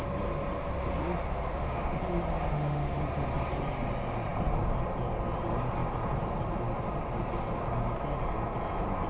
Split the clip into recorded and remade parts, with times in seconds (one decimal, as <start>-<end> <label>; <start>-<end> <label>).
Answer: 0.0-1.5 recorded; 1.5-2.0 remade; 2.0-2.5 recorded; 2.5-3.0 remade; 3.0-9.1 recorded